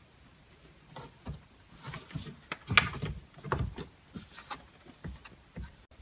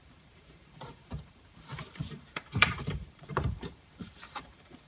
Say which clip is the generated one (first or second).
second